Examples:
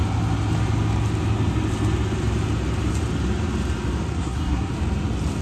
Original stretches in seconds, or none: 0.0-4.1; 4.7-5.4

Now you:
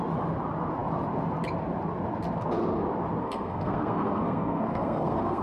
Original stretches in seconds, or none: 0.0-3.2